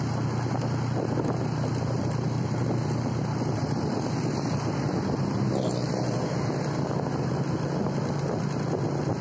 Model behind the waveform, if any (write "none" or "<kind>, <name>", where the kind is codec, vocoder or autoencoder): none